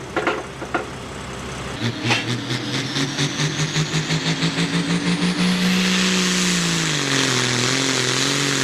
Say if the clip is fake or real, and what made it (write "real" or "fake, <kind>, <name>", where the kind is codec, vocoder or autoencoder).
real